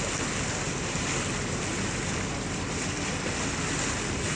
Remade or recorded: recorded